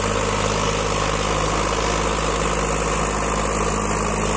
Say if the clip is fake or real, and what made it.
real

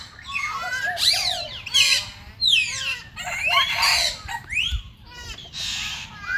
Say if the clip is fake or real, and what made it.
fake, vocoder, BigVGAN v2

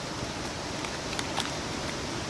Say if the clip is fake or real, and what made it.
fake, vocoder, BigVGAN v2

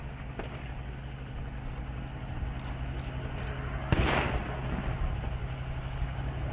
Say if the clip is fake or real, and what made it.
real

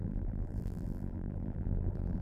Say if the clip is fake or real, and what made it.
fake, vocoder, BigVGAN v2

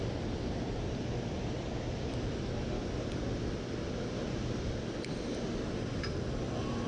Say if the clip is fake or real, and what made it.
fake, vocoder, BigVGAN v2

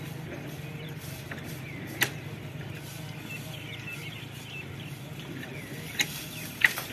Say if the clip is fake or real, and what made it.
fake, vocoder, BigVGAN v2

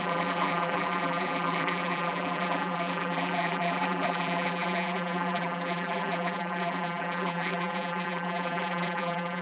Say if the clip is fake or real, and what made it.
fake, vocoder, BigVGAN v2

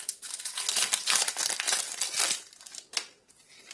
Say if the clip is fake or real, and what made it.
real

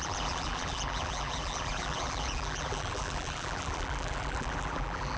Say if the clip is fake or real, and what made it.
fake, vocoder, BigVGAN v2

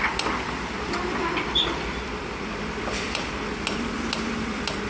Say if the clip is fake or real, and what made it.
fake, vocoder, BigVGAN v2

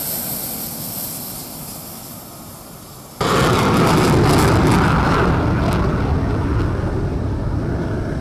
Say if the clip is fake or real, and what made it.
real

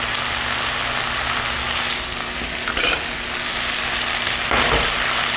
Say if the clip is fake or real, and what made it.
real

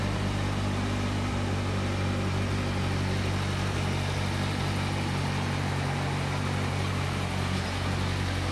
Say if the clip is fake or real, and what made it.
real